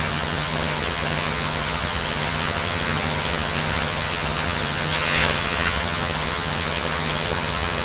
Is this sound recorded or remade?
remade